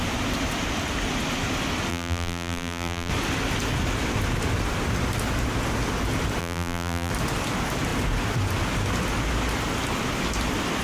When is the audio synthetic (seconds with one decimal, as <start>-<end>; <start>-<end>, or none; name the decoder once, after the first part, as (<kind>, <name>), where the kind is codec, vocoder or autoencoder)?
1.9-3.1 (vocoder, BigVGAN v2); 6.4-7.1